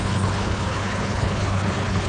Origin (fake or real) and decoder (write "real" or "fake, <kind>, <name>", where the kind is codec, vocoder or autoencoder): fake, codec, HILCodec